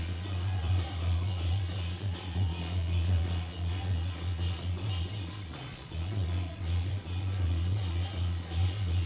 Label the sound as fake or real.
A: fake